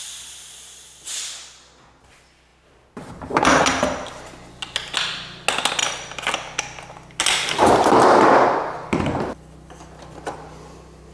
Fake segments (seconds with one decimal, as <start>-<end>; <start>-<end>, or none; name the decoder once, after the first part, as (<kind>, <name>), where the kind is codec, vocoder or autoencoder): none